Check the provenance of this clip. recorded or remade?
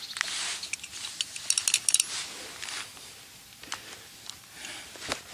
recorded